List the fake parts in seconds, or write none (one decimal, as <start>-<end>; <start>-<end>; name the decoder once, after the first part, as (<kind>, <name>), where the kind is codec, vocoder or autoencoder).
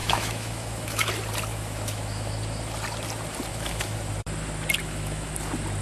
0.0-1.1 (autoencoder, DAC-VAE); 1.5-2.3; 3.5-4.0; 4.8-5.3